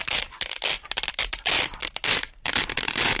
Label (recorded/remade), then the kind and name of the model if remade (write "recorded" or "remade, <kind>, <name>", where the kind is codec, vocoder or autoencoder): recorded